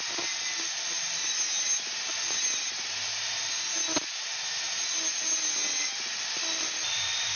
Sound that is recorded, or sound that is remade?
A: recorded